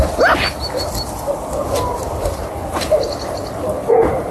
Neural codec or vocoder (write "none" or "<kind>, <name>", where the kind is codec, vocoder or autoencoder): none